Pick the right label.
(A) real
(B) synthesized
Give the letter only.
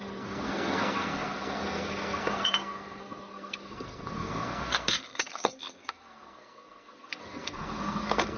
B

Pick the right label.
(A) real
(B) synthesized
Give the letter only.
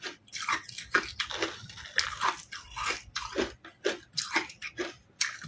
A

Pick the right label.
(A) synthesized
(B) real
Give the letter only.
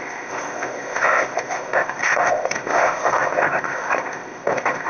A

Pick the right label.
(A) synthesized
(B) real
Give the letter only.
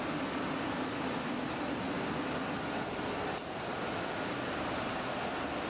B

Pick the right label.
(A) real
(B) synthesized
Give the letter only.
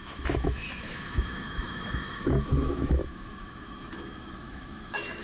B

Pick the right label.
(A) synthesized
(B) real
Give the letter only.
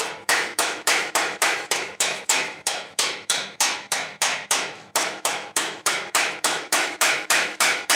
A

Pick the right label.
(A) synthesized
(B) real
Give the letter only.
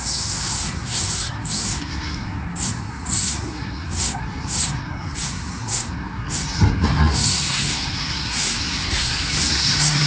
A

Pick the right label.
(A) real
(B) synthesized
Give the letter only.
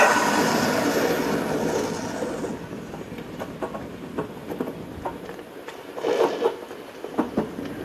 A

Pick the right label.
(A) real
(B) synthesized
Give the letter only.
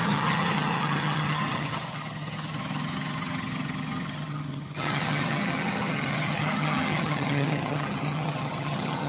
B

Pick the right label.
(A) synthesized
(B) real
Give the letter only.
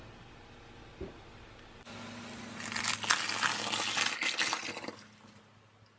B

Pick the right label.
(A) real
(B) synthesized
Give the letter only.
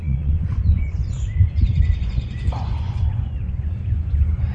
B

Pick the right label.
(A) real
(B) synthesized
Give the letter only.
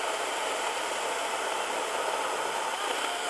A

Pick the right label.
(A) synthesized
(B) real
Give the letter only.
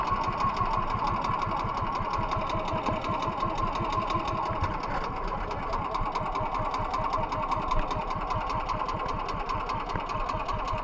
B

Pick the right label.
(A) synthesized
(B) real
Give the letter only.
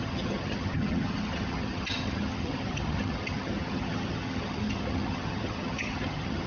A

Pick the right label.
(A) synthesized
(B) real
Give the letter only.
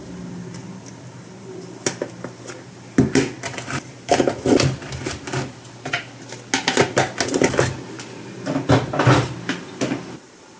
B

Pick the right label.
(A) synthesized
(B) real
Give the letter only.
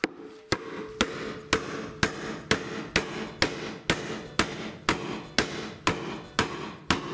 B